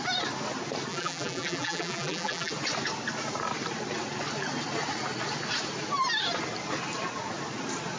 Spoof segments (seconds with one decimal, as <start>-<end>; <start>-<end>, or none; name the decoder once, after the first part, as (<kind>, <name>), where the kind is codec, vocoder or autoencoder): 0.9-2.5 (vocoder, BigVGAN v2)